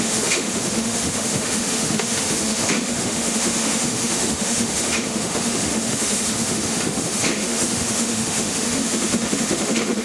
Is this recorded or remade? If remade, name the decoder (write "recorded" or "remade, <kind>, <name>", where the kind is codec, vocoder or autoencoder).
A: remade, autoencoder, DAC-VAE